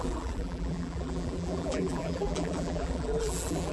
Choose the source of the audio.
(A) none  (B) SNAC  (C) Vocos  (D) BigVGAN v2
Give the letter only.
D